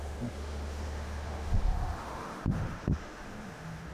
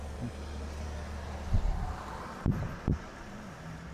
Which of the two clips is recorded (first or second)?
second